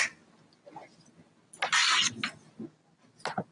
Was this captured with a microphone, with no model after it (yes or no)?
yes